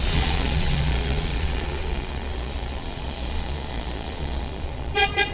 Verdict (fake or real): fake